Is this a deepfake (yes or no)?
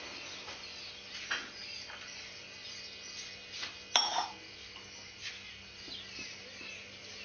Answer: no